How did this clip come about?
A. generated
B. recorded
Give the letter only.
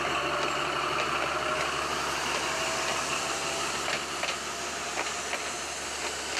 B